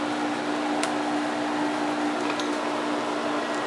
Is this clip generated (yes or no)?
no